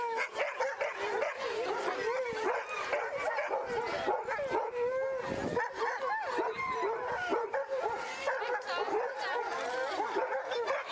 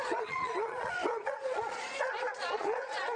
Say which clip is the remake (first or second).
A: second